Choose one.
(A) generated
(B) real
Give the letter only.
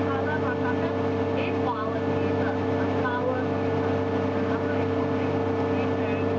B